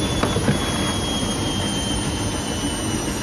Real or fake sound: real